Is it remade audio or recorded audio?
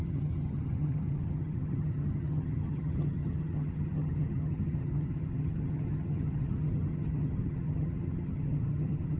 remade